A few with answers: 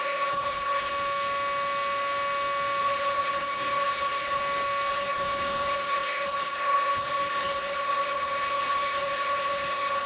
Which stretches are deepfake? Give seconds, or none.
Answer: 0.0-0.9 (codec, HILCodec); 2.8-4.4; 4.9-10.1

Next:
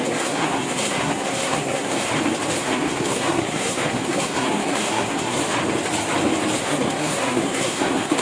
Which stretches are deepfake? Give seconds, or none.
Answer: 0.0-2.1 (codec, SNAC); 2.6-5.4; 6.6-8.2

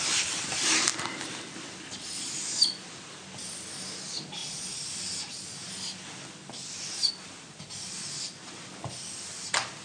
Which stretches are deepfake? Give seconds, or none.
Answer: none

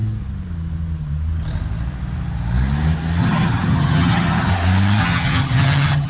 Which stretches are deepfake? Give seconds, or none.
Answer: 3.2-4.5 (vocoder, HiFi-GAN); 5.0-6.1